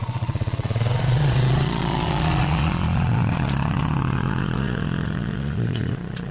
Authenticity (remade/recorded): remade